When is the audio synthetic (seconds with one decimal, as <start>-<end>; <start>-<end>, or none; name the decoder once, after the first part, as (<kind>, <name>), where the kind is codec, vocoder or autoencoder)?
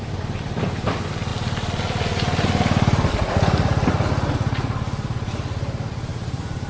none